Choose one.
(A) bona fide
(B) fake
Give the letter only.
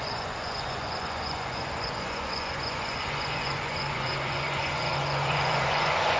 B